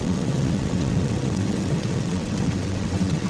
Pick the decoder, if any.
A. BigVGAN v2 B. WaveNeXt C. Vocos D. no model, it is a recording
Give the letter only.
B